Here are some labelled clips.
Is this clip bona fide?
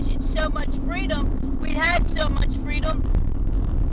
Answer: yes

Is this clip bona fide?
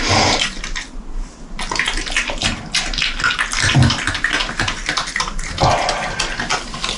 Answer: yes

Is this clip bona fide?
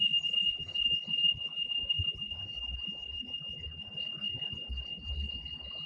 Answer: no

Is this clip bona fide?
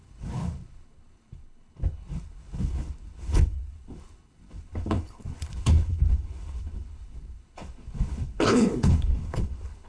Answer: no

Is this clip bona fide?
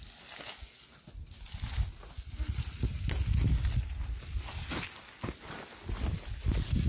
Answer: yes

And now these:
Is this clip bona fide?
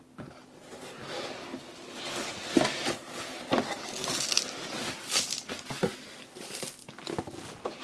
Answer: yes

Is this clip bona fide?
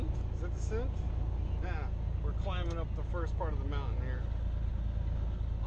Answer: yes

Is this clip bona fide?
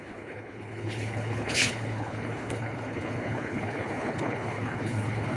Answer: no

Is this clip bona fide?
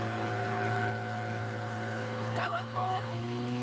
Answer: no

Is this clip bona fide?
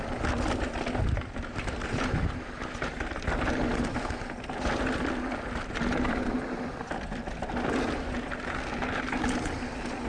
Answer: yes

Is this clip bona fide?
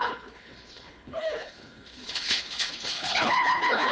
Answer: no